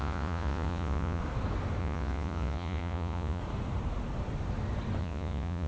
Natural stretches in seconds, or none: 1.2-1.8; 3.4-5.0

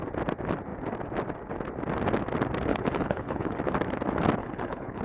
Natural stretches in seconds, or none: 0.0-2.7; 3.6-4.4

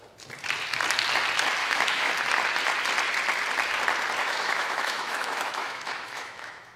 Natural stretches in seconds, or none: 0.0-1.6; 2.1-4.2

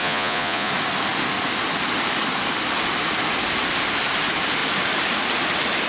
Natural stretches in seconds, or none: 0.7-5.9

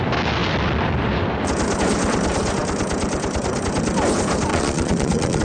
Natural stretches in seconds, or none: 0.0-4.5

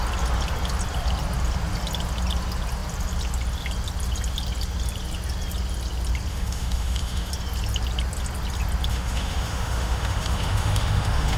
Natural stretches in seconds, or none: 0.0-6.3; 7.3-8.9

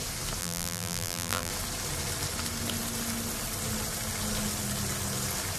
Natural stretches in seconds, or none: 0.0-0.4; 1.5-5.6

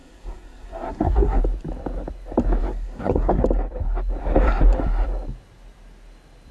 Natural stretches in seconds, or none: 1.4-2.6; 3.4-6.5